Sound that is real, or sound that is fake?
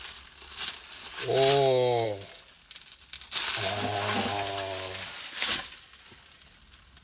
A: real